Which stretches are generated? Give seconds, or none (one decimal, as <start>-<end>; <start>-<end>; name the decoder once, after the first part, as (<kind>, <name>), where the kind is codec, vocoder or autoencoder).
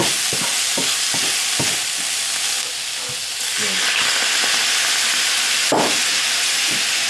none